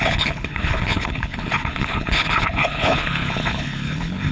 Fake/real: fake